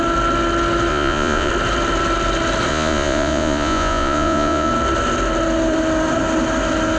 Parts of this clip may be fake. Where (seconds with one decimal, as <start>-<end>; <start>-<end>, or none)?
0.9-1.5; 2.7-4.7